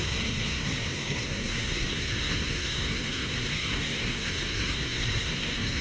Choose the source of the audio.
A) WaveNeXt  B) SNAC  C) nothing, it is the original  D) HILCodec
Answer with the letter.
B